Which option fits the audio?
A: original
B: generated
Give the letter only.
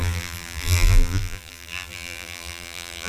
B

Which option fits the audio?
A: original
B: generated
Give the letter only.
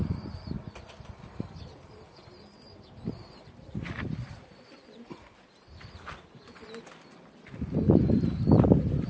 B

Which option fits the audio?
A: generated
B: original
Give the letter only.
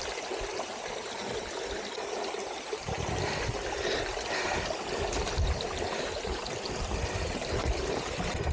B